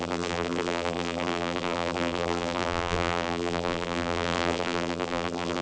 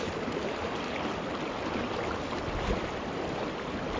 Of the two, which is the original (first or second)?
second